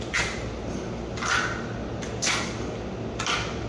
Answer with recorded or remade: recorded